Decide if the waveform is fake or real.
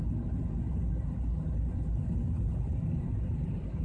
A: real